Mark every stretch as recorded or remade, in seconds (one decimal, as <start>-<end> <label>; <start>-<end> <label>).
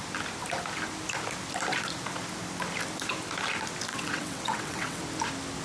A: 0.0-3.9 recorded; 3.9-5.0 remade; 5.0-5.6 recorded